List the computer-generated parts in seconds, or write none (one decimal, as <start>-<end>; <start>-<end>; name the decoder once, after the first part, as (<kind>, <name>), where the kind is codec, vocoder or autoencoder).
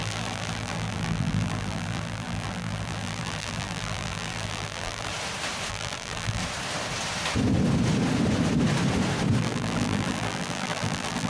0.0-5.1 (vocoder, BigVGAN v2); 5.7-6.4; 9.4-11.3